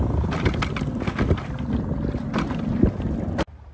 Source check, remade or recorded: recorded